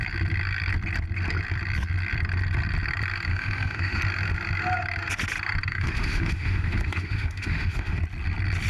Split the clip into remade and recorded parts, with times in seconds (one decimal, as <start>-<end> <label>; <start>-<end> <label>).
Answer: 0.0-3.3 recorded; 3.3-4.0 remade; 4.0-5.7 recorded; 5.7-8.0 remade; 8.0-8.7 recorded